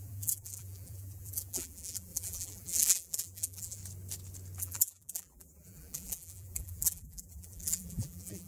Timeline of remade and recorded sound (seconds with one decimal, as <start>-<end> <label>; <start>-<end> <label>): 0.0-3.8 remade; 3.8-4.6 recorded; 4.6-8.5 remade